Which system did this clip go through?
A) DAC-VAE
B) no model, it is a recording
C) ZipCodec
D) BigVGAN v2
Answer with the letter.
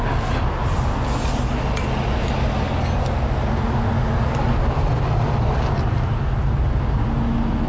B